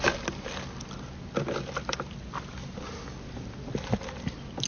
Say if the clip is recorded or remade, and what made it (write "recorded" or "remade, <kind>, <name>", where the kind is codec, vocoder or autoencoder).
recorded